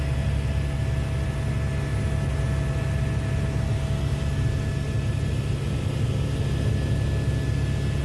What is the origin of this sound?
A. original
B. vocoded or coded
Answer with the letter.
A